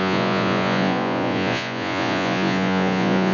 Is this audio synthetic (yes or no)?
yes